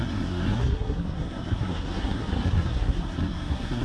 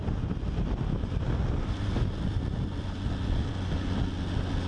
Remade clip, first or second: first